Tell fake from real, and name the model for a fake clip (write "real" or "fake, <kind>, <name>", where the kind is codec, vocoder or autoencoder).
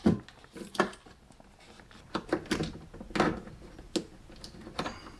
real